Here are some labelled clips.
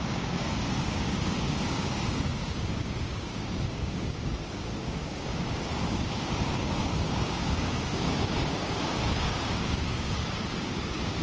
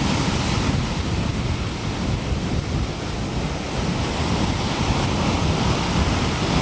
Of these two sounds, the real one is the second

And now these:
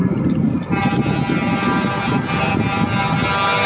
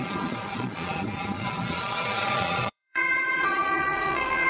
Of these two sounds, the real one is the first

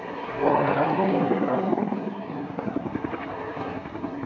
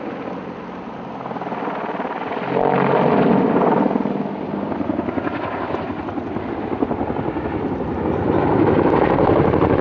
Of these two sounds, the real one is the second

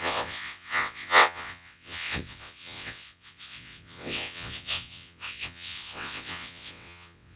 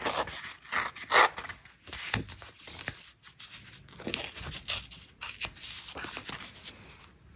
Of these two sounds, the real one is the second